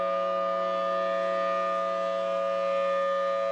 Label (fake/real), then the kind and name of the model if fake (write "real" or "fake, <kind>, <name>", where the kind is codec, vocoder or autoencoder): real